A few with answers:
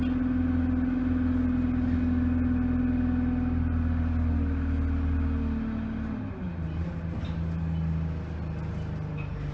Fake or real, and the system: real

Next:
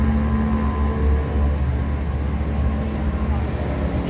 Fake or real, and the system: real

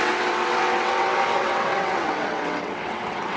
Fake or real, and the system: fake, vocoder, WaveNeXt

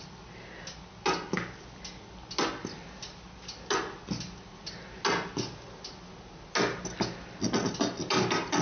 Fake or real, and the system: real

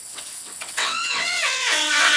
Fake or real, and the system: fake, vocoder, WaveNeXt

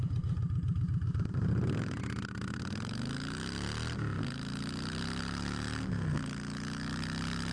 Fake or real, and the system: real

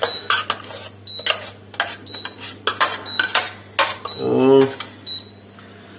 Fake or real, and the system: real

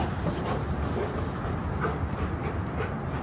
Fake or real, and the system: real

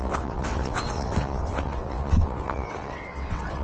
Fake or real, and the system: fake, vocoder, WaveNeXt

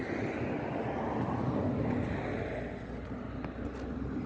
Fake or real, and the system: real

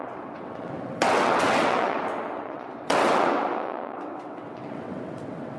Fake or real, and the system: fake, vocoder, WaveNeXt